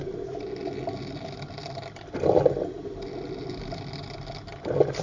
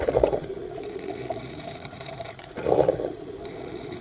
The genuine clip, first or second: first